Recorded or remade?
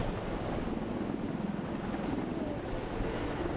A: recorded